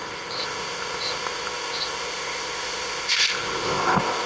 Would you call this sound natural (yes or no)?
no